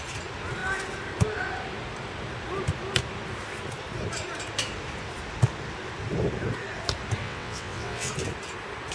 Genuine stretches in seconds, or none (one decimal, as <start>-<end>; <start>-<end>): 0.0-7.2; 8.1-8.9